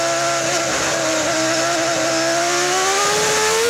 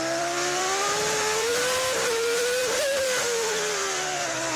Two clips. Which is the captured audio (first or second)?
first